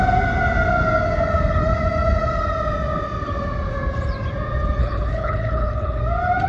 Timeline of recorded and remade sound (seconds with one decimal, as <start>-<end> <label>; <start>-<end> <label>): 0.0-4.8 recorded; 4.8-6.0 remade; 6.0-6.5 recorded